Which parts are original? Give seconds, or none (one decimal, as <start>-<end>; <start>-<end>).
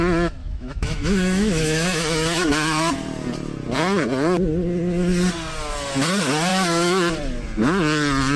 0.0-0.4; 2.9-6.5; 7.1-8.4